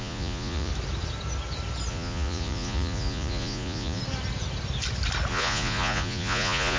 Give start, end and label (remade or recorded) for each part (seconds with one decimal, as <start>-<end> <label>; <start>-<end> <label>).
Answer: 0.0-0.7 remade; 0.7-1.9 recorded; 1.9-4.0 remade; 4.0-5.3 recorded; 5.3-6.8 remade